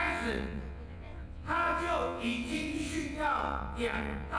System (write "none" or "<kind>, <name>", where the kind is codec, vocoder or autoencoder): vocoder, WaveNeXt